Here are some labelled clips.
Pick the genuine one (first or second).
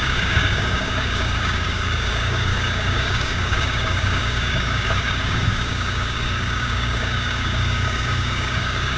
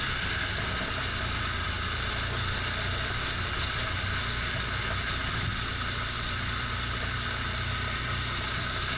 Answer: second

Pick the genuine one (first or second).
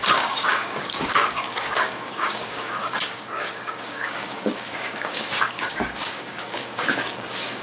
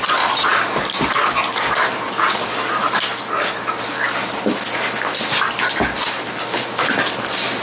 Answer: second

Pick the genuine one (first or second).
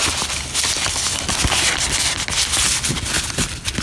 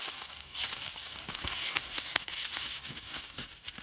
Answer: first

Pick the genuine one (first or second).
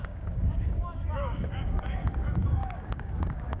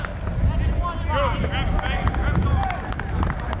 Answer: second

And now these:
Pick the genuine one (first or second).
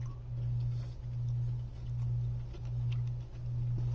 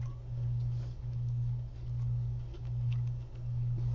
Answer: first